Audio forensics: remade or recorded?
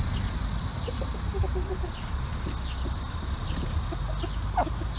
recorded